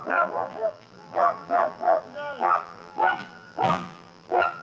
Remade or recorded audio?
remade